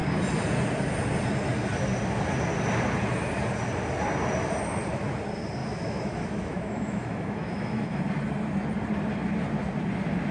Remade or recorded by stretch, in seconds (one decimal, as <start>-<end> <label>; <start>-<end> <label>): 0.0-5.6 recorded; 5.6-8.0 remade; 8.0-10.3 recorded